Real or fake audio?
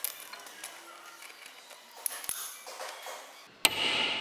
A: real